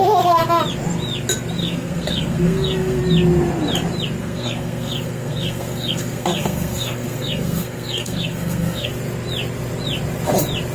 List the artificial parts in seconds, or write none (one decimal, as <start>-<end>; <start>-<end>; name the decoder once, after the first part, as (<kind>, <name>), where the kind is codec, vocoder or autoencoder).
1.6-3.0 (codec, SNAC); 4.2-8.9

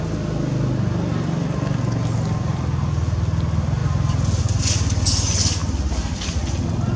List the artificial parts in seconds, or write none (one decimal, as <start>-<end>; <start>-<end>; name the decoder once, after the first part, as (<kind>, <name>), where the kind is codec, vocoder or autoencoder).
5.6-6.5 (vocoder, BigVGAN v2)